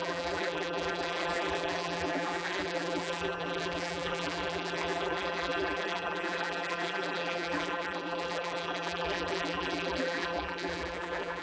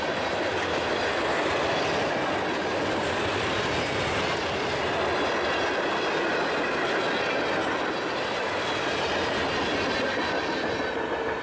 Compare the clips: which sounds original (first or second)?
second